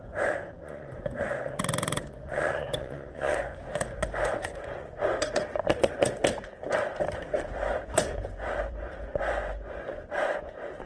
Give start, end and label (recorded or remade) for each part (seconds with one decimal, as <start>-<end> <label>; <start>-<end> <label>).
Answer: 0.0-6.2 remade; 6.2-7.4 recorded; 7.4-10.9 remade